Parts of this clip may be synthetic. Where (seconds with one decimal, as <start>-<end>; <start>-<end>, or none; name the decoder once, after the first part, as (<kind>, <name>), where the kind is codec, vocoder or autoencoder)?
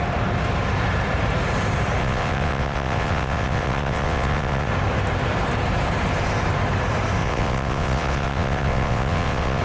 2.0-4.7 (vocoder, WaveNeXt); 7.2-9.6